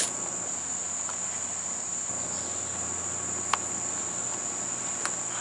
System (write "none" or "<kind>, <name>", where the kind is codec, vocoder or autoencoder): none